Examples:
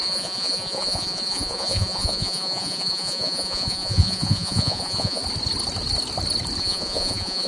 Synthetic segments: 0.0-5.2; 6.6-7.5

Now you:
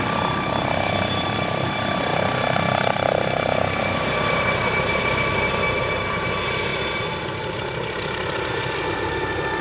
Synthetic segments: 0.0-2.1; 3.7-6.7; 8.5-9.6

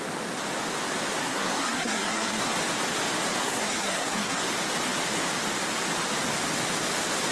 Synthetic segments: 1.2-2.5; 3.4-4.4

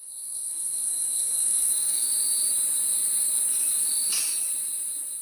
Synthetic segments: 0.0-2.1

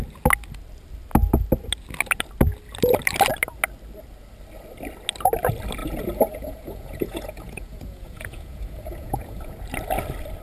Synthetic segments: 5.8-9.5

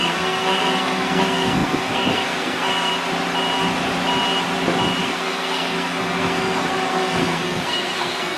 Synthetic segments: 0.0-2.9; 5.0-8.4

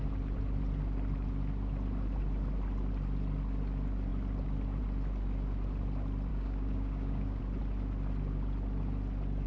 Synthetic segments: 6.3-7.4